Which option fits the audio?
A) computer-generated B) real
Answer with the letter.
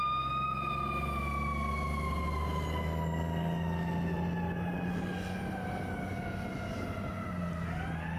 B